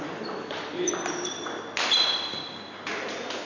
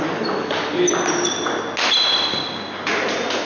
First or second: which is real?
second